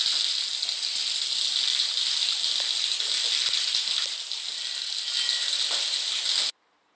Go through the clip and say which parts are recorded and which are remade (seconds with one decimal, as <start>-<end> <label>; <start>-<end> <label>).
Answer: 0.0-7.0 recorded